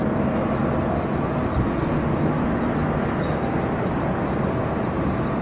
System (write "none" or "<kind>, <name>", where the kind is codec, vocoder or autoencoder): none